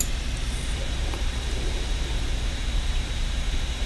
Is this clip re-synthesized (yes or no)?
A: yes